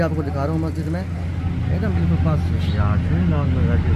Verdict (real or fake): real